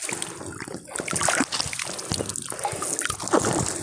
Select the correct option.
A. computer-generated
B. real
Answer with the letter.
B